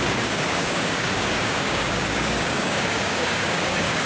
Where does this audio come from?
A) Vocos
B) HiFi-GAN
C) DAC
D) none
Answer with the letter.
C